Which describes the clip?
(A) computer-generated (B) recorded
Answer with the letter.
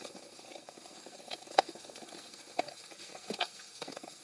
A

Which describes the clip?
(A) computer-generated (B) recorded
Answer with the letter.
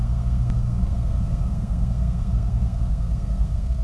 A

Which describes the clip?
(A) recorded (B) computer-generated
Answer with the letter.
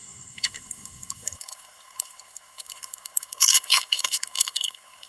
B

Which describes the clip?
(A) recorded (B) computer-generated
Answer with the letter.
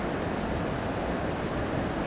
A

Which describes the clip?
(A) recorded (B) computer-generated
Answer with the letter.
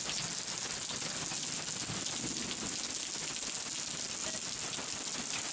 A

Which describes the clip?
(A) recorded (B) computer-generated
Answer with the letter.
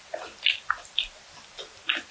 A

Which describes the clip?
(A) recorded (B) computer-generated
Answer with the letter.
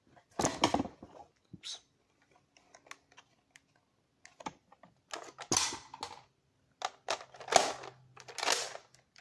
A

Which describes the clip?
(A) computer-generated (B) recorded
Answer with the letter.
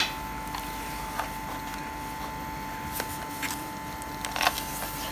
B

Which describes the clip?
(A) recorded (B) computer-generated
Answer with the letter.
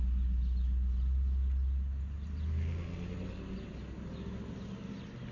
A